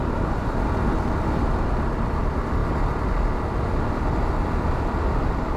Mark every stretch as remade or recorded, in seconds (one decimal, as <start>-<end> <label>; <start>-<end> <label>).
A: 0.0-2.2 remade; 2.2-2.6 recorded; 2.6-5.6 remade